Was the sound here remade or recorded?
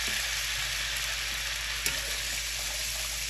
recorded